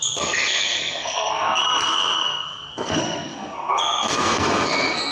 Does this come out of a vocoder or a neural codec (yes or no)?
yes